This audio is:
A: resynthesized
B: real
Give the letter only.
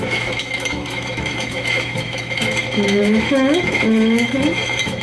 A